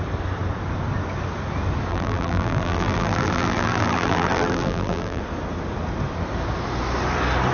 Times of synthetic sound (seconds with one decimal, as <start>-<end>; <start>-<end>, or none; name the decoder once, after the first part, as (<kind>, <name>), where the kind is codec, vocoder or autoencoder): 1.9-5.2 (vocoder, BigVGAN v2)